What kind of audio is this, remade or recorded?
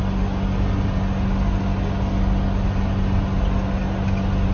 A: recorded